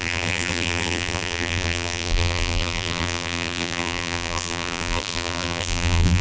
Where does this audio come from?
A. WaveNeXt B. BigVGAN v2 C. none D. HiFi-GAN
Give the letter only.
B